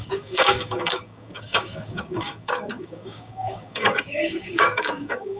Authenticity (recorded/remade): remade